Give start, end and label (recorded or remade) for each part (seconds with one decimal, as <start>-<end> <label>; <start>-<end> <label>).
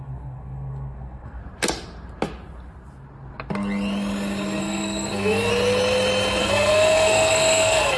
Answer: 0.0-1.4 remade; 1.4-4.6 recorded; 4.6-5.5 remade; 5.5-6.4 recorded; 6.4-8.0 remade